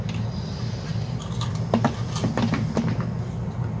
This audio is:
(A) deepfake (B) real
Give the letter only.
B